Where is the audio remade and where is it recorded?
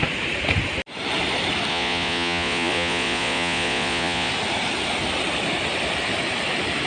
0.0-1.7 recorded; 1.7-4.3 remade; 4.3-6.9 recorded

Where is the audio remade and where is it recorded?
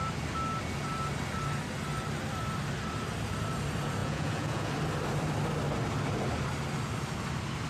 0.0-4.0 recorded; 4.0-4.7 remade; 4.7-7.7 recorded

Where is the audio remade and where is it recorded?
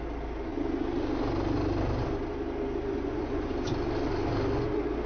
0.0-2.9 recorded; 2.9-3.5 remade; 3.5-5.1 recorded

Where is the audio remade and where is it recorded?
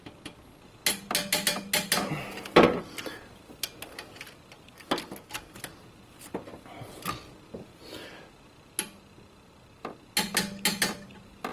0.0-11.5 recorded